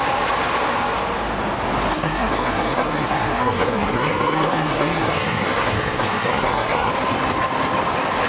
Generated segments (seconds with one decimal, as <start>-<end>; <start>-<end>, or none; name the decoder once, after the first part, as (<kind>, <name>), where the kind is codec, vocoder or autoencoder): 1.9-6.9 (codec, SNAC)